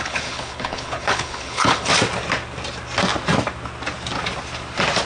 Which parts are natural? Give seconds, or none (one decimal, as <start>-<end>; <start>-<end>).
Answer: 1.9-5.1